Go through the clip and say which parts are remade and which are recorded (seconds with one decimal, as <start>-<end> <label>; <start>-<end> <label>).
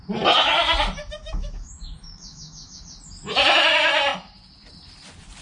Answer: 0.0-1.2 recorded; 1.2-2.8 remade; 2.8-5.4 recorded